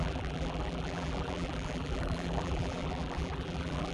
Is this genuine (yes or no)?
no